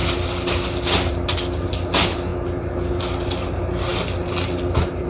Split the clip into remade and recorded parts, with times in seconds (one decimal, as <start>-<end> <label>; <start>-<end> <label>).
0.0-5.1 recorded